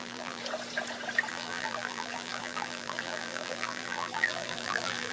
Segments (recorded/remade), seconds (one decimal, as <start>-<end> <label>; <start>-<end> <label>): 0.0-0.4 remade; 0.4-1.3 recorded; 1.3-5.1 remade